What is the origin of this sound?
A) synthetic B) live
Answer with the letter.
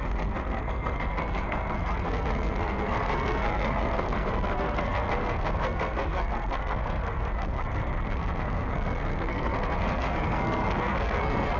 A